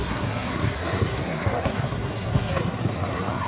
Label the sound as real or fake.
fake